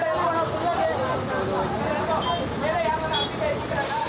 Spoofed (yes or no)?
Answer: no